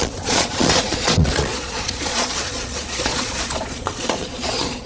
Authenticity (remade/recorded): remade